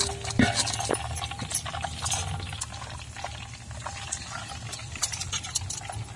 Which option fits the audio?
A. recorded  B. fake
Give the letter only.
A